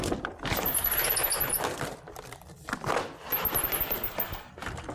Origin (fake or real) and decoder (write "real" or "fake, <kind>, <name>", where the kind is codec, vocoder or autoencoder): real